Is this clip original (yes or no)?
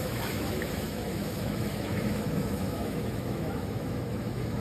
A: no